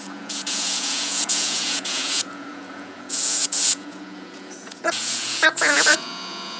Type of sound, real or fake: fake